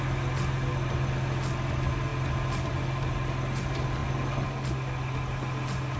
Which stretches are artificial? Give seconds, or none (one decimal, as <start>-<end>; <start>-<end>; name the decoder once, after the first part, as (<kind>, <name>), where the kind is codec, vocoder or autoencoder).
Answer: none